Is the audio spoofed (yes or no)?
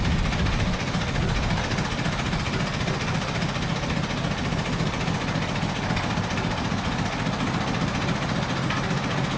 no